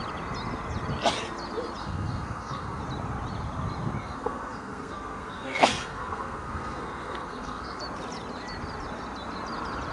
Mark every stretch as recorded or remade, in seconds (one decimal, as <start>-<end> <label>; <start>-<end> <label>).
0.0-1.8 recorded; 1.8-2.8 remade; 2.8-4.0 recorded; 4.0-7.8 remade; 7.8-9.9 recorded